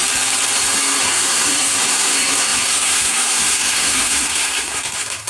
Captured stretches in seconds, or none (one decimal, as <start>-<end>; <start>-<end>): 0.0-1.0